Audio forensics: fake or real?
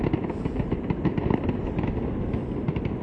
real